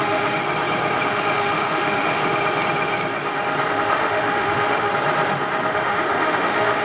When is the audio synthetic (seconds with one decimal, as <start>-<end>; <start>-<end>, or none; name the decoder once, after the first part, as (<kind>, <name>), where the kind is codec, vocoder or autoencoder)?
0.0-0.4 (autoencoder, DAC-VAE); 1.1-2.2; 3.7-4.9; 5.7-6.8